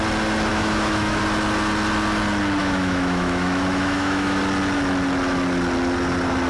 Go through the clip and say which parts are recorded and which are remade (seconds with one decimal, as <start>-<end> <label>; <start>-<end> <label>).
0.0-0.5 recorded; 0.5-1.2 remade; 1.2-2.6 recorded; 2.6-4.4 remade; 4.4-6.5 recorded